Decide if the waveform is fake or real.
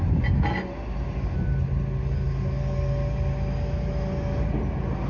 real